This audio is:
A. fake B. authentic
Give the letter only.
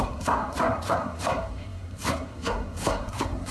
A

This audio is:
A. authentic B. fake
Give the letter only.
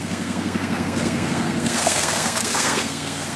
B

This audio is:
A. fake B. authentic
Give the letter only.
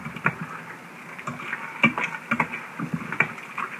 B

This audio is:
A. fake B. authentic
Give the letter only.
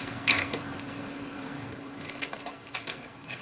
A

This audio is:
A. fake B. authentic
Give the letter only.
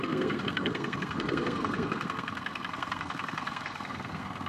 A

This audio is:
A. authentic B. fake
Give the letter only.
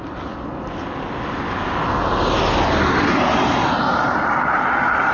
A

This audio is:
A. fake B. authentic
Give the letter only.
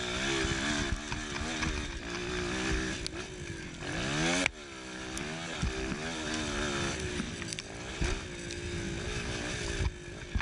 B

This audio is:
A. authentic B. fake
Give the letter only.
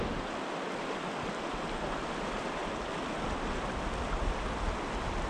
A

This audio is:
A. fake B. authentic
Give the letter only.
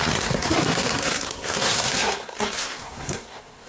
A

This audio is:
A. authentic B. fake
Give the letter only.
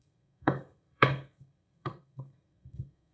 B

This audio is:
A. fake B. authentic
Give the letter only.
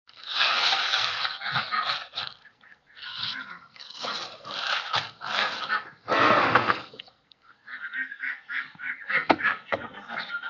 A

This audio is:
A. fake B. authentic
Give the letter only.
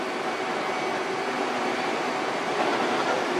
B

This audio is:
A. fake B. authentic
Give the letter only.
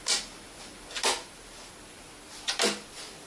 B